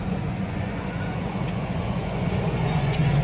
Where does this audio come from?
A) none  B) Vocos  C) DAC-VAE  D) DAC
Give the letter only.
B